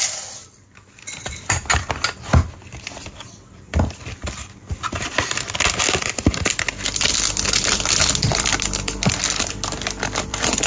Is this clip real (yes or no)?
no